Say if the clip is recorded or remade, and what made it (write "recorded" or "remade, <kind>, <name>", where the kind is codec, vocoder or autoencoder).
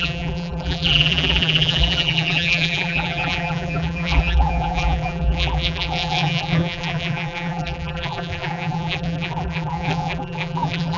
remade, vocoder, BigVGAN v2